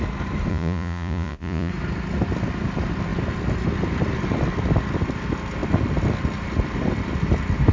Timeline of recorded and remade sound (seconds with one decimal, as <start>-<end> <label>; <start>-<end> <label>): 0.0-0.5 recorded; 0.5-1.7 remade; 1.7-7.7 recorded